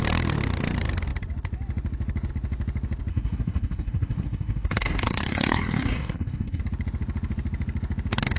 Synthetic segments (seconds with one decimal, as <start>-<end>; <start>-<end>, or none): 3.1-6.6